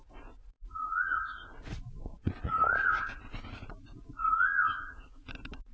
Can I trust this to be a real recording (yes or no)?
no